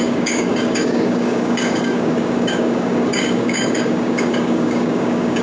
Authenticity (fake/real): fake